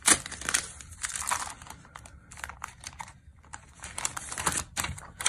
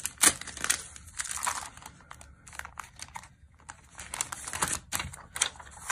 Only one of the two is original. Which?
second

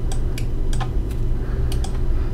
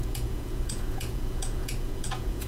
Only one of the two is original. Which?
first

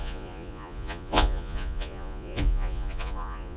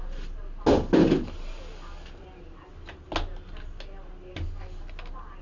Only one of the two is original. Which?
second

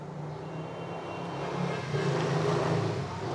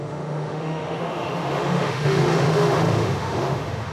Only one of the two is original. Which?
first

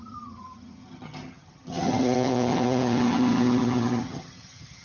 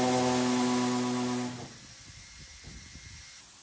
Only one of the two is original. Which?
second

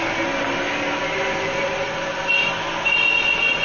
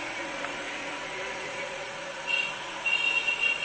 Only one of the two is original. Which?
first